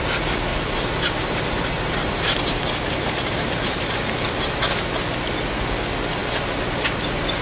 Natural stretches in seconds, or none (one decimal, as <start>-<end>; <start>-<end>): 0.0-0.5; 4.6-7.4